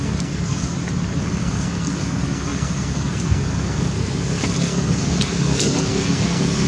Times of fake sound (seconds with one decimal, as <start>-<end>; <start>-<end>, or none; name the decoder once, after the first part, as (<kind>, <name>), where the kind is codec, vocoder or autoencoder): 0.0-0.7 (codec, SNAC); 1.2-6.7